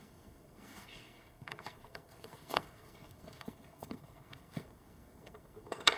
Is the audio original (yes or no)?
no